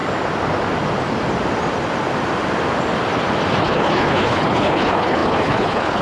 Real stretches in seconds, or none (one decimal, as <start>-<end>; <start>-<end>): 0.0-3.6